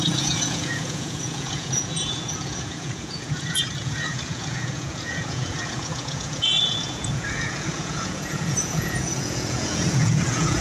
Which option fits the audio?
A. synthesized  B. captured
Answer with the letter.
A